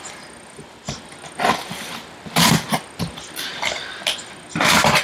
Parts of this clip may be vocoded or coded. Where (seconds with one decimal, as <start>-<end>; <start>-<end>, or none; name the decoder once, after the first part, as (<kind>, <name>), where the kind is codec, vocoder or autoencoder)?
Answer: none